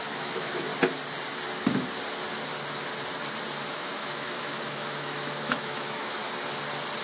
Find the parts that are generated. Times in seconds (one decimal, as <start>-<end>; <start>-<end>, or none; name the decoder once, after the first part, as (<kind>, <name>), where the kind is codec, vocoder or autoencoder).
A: 0.0-0.7 (autoencoder, DAC-VAE); 3.7-6.2